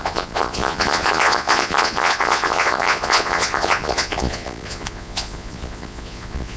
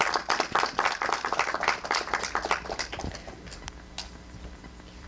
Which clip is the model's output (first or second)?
first